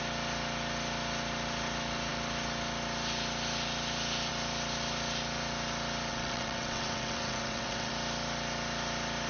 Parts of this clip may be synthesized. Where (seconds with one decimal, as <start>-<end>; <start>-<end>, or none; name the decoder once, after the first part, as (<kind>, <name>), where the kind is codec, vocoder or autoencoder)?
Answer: 6.1-7.9 (vocoder, WaveNeXt)